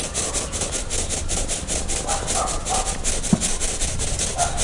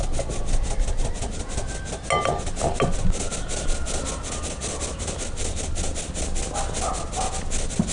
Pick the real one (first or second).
second